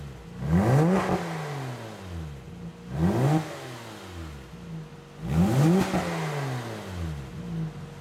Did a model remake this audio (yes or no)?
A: no